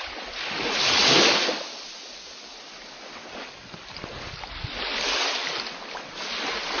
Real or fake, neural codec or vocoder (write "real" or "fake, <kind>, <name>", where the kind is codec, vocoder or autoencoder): real